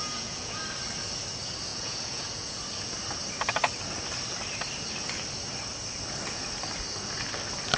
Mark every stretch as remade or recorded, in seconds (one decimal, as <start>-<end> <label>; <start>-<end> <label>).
0.0-0.6 remade; 0.6-1.7 recorded; 1.7-2.6 remade; 2.6-7.8 recorded